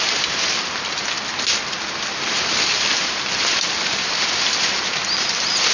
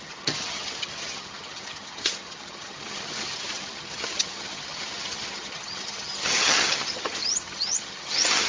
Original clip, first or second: first